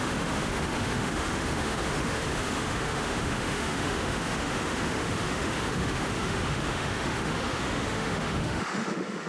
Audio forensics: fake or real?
fake